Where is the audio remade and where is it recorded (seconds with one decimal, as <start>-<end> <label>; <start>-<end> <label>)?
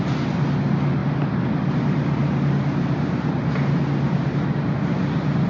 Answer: 0.0-5.5 recorded